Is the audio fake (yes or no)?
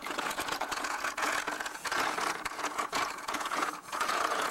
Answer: yes